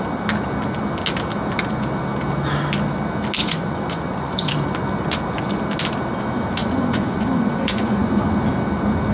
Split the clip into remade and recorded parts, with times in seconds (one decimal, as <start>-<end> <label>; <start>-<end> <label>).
0.0-3.4 recorded; 3.4-4.5 remade; 4.5-6.6 recorded; 6.6-8.2 remade; 8.2-9.1 recorded